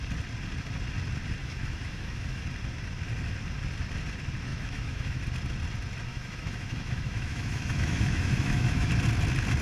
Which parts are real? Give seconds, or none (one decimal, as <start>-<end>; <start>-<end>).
0.0-1.4; 2.4-4.5; 5.2-6.1; 8.9-9.6